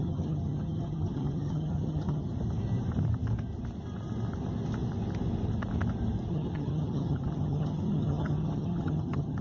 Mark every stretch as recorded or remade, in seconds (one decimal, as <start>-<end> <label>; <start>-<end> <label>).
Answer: 0.0-2.3 remade; 2.3-6.3 recorded; 6.3-9.4 remade

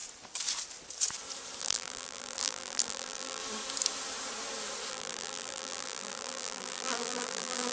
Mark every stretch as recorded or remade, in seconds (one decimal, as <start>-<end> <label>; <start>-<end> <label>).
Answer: 0.0-1.6 recorded; 1.6-3.4 remade; 3.4-4.9 recorded; 4.9-7.7 remade